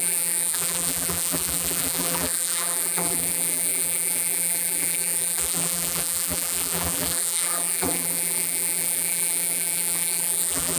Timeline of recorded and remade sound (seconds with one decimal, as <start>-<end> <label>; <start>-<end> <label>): 0.0-10.8 remade